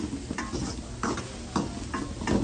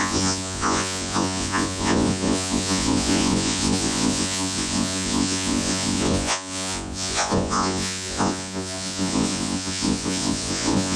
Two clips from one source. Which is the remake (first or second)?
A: second